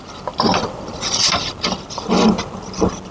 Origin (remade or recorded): recorded